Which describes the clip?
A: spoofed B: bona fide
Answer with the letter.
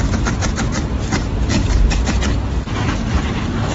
B